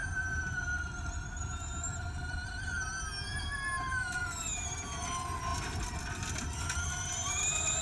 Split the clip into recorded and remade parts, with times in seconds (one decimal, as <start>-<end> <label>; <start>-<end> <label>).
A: 0.0-7.8 recorded